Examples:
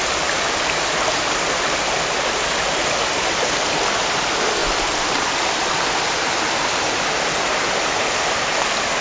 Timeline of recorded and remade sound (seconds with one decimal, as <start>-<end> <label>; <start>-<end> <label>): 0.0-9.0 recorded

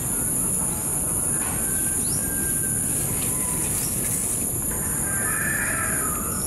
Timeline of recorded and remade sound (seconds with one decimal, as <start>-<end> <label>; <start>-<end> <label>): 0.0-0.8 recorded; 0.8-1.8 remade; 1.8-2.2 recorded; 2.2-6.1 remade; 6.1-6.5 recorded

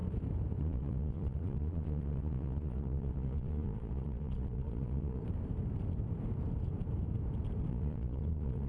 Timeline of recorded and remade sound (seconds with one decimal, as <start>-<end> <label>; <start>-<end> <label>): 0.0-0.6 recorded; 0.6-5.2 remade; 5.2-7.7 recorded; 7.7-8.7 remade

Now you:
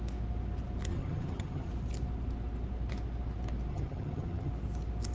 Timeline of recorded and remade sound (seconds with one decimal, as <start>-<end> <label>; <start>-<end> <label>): 0.0-0.9 recorded; 0.9-1.7 remade; 1.7-3.7 recorded; 3.7-4.5 remade; 4.5-5.1 recorded